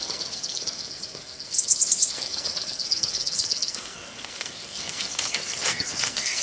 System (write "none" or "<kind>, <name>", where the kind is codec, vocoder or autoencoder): codec, SNAC